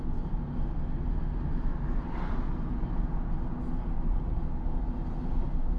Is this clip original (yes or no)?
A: yes